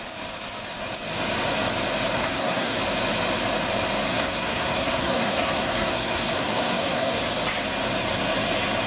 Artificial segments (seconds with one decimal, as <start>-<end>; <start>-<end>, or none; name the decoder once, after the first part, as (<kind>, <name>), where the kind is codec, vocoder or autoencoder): 2.2-2.8 (codec, SNAC); 4.1-7.2